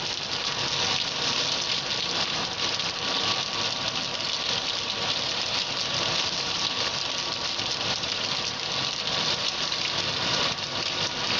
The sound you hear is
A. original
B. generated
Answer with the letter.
A